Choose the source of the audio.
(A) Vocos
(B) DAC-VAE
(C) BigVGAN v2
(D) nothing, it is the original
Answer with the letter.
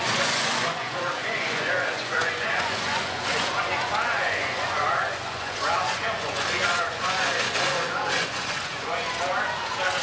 A